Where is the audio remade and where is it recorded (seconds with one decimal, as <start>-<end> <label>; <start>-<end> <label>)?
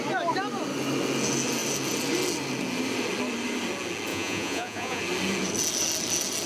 0.0-4.1 recorded; 4.1-5.0 remade; 5.0-6.5 recorded